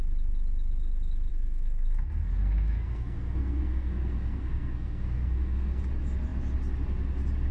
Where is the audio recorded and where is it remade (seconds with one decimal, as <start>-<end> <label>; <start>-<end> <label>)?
0.0-1.3 recorded; 1.3-5.8 remade; 5.8-7.5 recorded